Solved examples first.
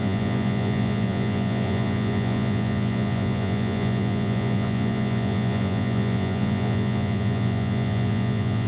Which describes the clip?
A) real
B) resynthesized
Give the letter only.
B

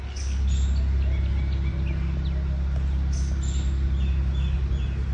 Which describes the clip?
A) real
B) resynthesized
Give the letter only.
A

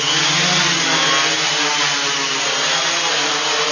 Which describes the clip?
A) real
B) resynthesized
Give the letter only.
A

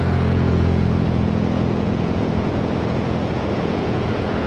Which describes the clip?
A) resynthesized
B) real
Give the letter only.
A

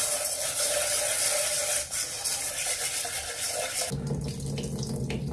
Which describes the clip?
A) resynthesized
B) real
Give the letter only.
B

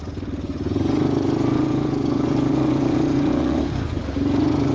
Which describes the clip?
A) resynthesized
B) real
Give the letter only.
A